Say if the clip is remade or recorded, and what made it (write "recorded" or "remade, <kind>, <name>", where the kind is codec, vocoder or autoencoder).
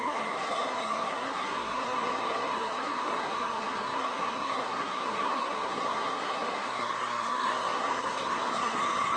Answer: remade, codec, SNAC